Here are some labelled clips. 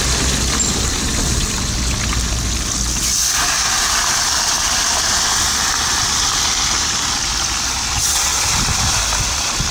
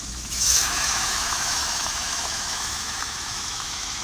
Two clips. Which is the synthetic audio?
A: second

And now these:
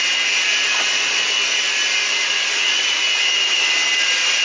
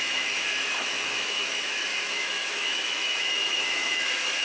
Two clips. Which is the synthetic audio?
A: second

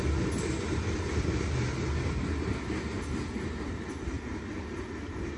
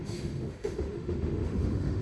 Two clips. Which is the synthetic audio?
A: second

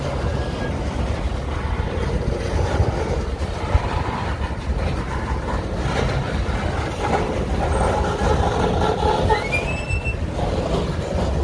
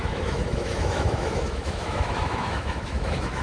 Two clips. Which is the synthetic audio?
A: second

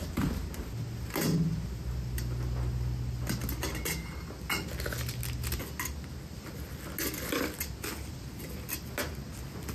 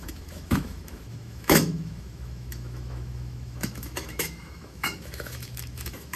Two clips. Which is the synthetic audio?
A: second